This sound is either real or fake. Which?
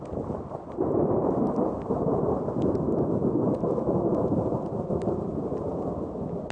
real